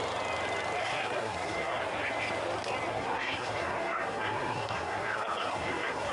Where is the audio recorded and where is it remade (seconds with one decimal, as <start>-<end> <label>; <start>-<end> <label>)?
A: 0.0-0.8 recorded; 0.8-1.8 remade; 1.8-2.9 recorded; 2.9-6.1 remade